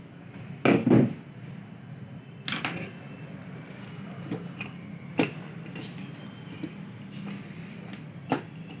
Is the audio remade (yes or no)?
no